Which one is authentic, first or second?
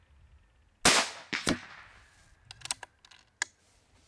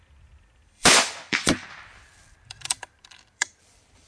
first